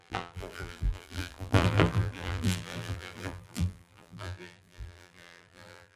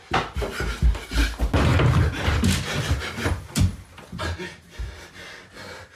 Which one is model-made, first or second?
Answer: first